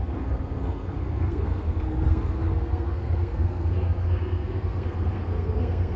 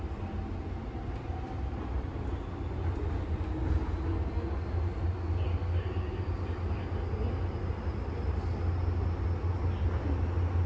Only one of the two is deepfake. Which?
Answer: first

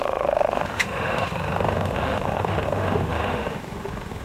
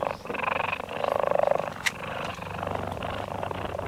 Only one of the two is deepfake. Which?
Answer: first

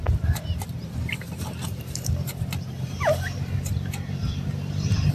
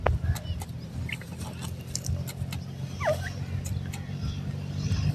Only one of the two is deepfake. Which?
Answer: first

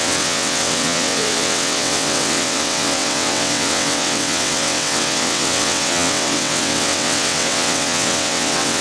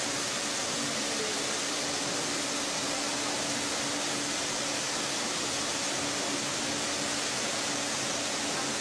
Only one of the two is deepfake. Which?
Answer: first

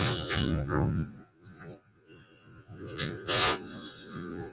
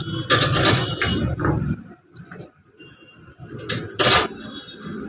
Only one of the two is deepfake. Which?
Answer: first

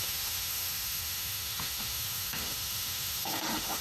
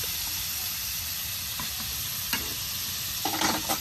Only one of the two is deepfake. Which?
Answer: first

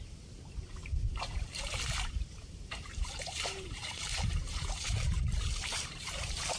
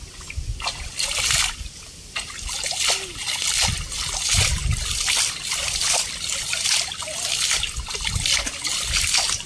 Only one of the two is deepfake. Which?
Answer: first